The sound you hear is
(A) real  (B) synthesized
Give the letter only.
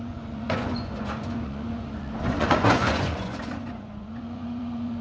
B